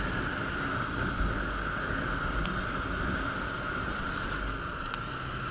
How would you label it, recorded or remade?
recorded